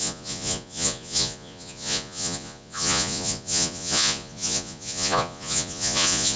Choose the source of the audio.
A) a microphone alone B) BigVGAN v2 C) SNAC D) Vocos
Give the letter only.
D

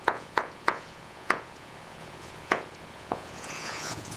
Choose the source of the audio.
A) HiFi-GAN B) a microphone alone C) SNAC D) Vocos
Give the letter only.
D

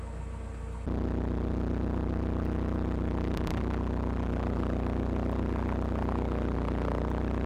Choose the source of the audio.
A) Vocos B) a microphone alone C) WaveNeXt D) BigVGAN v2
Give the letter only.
B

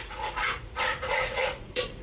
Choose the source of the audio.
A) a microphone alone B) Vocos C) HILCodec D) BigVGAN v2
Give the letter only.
B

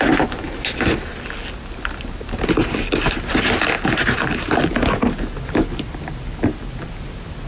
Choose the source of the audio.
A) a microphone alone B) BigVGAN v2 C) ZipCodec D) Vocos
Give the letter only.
A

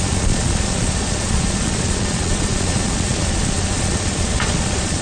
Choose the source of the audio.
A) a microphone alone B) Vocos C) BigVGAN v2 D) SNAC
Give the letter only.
B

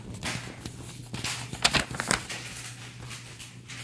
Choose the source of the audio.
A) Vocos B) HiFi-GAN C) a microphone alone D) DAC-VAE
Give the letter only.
C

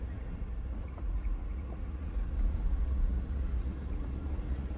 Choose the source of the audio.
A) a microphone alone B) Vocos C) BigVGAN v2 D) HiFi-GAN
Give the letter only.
B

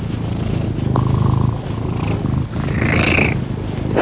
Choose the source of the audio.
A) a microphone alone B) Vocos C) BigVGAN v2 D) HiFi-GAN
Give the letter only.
A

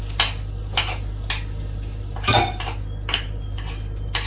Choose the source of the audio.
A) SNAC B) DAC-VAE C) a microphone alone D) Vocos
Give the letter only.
C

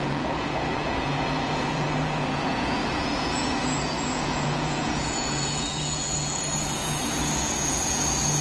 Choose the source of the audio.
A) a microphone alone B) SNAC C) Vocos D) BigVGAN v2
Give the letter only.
C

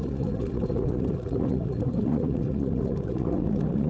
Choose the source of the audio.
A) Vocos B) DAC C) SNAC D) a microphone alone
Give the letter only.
A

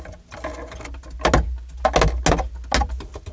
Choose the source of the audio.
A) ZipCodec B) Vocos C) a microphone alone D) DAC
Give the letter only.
C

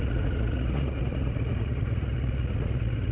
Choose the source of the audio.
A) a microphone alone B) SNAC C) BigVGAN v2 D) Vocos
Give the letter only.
D